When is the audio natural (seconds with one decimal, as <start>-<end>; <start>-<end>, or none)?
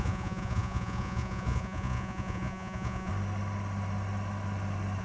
3.1-5.0